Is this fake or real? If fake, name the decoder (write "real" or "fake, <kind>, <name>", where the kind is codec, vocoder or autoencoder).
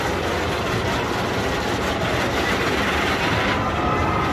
real